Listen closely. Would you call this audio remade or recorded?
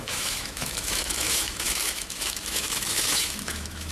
remade